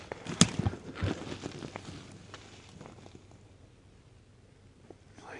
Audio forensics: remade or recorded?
recorded